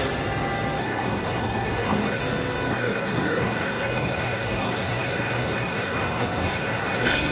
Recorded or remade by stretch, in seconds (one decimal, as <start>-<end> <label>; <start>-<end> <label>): 0.0-0.8 recorded; 0.8-2.2 remade; 2.2-2.7 recorded; 2.7-7.3 remade